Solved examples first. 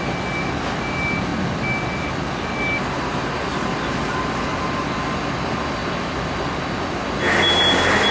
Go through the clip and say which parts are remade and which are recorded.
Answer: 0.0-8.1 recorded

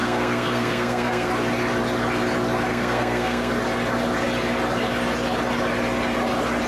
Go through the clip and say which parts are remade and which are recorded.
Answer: 0.0-1.3 remade; 1.3-2.7 recorded; 2.7-3.5 remade; 3.5-6.7 recorded

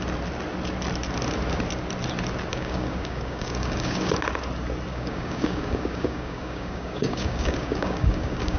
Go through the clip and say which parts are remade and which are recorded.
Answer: 0.0-2.5 recorded; 2.5-4.1 remade; 4.1-4.9 recorded; 4.9-8.6 remade

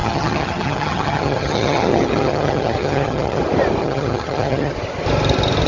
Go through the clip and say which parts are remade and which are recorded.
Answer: 0.0-3.4 remade; 3.4-3.8 recorded; 3.8-4.7 remade; 4.7-5.7 recorded